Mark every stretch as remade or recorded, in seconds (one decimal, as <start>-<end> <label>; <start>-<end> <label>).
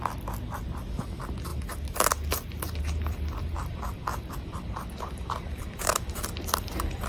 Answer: 0.0-1.5 remade; 1.5-2.8 recorded; 2.8-7.1 remade